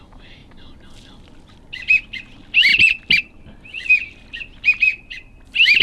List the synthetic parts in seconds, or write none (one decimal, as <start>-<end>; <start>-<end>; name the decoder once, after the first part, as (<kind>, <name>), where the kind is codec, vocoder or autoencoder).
4.9-5.8 (vocoder, BigVGAN v2)